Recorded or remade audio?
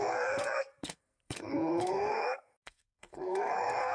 remade